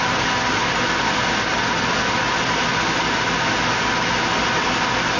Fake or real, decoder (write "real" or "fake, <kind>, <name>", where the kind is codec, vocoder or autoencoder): real